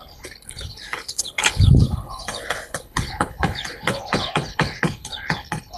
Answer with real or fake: fake